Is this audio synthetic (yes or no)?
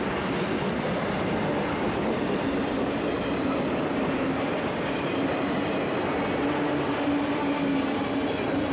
no